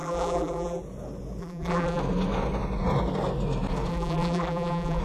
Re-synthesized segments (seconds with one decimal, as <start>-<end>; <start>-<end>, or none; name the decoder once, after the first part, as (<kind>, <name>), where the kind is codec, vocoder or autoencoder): 0.0-0.8 (vocoder, BigVGAN v2); 1.4-2.0; 3.9-5.0